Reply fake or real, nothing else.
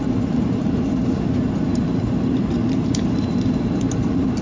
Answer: fake